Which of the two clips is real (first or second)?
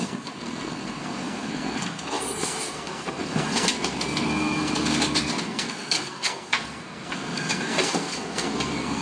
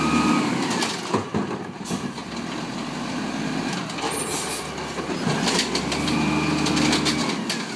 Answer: second